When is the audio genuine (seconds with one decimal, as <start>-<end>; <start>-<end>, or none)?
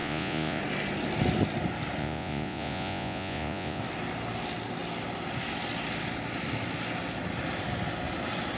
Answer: 0.6-2.0; 3.8-8.6